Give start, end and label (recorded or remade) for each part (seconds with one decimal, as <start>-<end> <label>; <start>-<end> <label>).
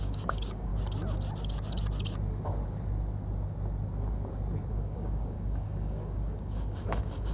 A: 0.0-0.7 remade; 0.7-4.7 recorded; 4.7-7.3 remade